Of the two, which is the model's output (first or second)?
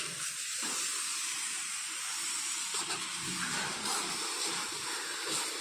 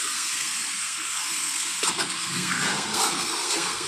second